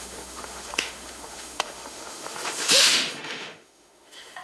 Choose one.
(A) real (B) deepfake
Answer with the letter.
B